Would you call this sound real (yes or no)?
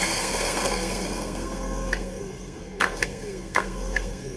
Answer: no